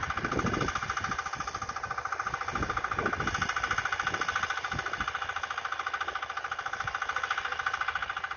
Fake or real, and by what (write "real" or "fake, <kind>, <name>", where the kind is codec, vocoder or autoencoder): real